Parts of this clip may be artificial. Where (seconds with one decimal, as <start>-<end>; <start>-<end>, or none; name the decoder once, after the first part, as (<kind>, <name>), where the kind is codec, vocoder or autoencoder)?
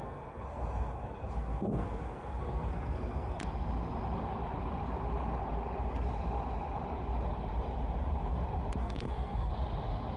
0.0-3.4 (codec, SNAC); 8.8-9.5